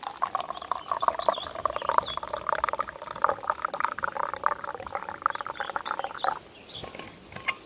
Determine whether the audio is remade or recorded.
recorded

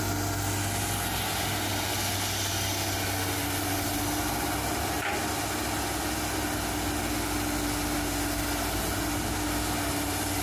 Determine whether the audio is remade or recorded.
recorded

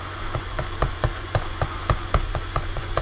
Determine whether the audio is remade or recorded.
remade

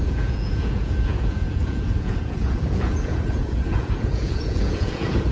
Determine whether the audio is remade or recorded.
remade